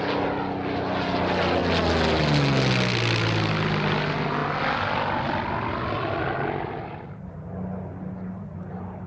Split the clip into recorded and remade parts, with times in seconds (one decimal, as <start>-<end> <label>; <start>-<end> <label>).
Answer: 0.0-9.1 recorded

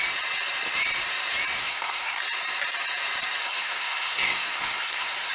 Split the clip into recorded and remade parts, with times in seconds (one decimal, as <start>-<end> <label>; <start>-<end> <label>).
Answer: 0.0-1.6 recorded; 1.6-2.2 remade; 2.2-3.4 recorded; 3.4-5.3 remade

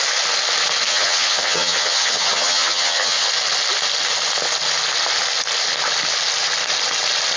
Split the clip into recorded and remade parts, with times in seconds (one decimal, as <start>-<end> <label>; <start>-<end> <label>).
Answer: 0.0-0.9 recorded; 0.9-3.3 remade; 3.3-7.4 recorded